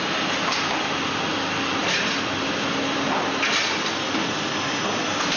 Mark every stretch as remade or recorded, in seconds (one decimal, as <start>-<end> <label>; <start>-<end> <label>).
0.0-5.4 recorded